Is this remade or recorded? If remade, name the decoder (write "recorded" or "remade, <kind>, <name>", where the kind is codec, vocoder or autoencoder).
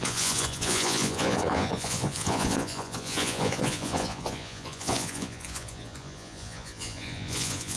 remade, vocoder, Vocos